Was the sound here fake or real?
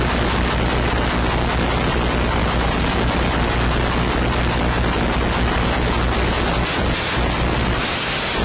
real